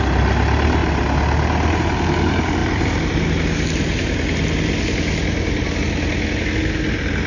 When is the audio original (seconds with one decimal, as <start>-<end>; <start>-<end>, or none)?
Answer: 0.0-7.3